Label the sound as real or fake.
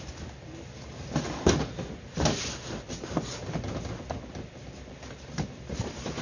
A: real